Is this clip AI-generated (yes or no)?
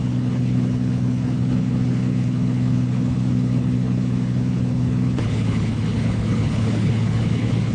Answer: yes